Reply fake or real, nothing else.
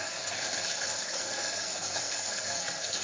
fake